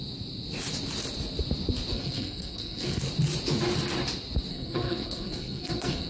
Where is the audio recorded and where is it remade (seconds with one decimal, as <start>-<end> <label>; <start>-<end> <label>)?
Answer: 0.0-1.9 recorded; 1.9-3.0 remade; 3.0-4.5 recorded; 4.5-6.1 remade

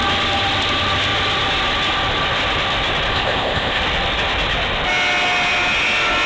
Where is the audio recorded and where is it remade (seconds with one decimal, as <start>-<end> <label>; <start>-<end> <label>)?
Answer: 0.0-3.1 recorded; 3.1-3.8 remade; 3.8-6.3 recorded